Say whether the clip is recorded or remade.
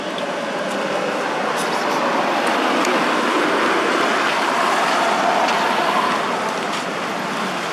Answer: recorded